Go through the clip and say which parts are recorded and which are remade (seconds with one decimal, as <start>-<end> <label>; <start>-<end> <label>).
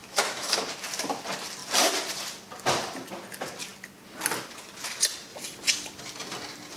0.0-0.6 remade; 0.6-6.8 recorded